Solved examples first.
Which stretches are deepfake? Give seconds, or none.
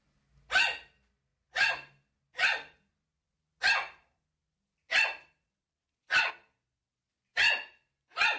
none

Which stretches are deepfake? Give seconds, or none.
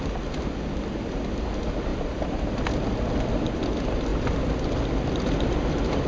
none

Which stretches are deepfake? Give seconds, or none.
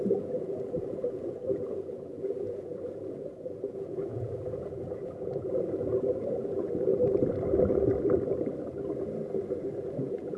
0.0-6.9 (vocoder, Vocos); 9.8-10.4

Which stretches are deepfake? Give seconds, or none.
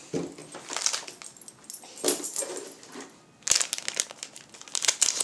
none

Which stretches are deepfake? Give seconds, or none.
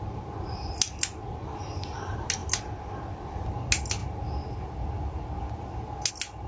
none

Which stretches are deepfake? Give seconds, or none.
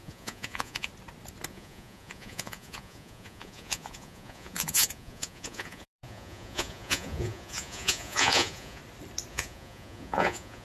0.0-0.9 (vocoder, Vocos); 1.5-8.8; 9.3-10.6